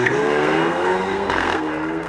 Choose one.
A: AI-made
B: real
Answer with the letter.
A